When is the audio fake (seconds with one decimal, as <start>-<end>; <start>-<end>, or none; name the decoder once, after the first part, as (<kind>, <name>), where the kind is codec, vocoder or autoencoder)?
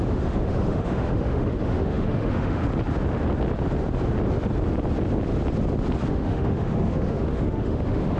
0.0-2.6 (autoencoder, DAC-VAE); 6.1-8.2